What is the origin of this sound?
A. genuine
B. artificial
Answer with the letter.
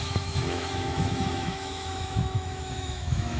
B